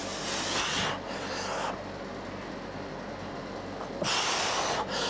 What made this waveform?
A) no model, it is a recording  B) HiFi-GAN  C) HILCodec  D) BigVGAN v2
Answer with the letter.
A